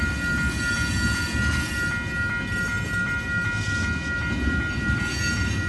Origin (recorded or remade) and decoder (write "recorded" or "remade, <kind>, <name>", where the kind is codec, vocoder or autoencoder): recorded